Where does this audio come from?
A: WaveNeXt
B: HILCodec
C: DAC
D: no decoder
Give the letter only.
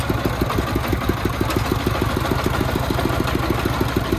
D